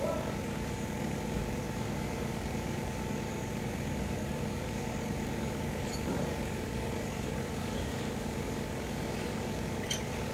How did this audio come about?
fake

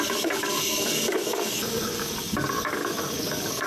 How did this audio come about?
fake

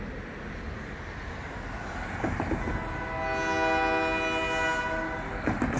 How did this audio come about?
real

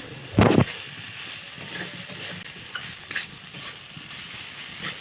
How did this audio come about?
real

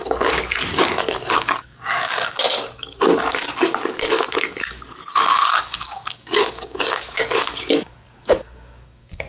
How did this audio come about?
fake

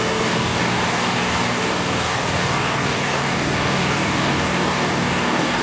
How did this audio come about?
fake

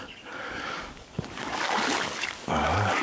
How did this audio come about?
fake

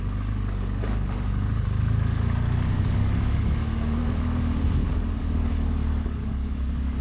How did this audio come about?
fake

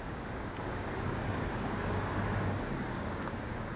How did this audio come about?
fake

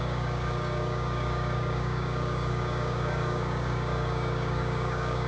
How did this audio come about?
fake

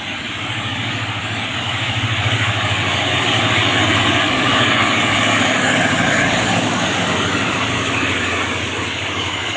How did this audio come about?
fake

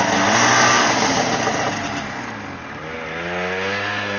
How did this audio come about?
real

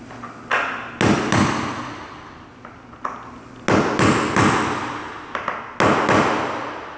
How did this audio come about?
real